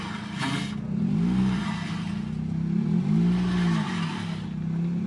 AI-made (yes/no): no